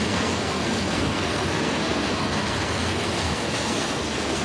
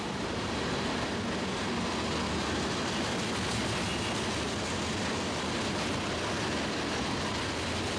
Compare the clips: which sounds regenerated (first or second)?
first